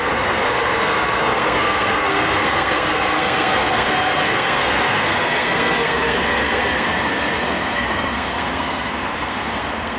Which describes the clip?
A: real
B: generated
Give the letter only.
B